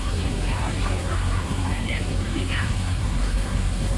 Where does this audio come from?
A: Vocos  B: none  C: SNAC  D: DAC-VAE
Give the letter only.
C